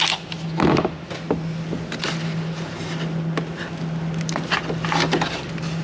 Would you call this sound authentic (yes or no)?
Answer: yes